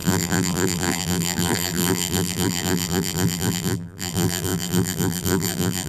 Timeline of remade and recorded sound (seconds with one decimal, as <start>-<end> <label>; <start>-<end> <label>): 0.0-5.9 remade